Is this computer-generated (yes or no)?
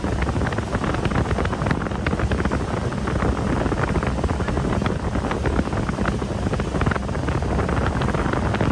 no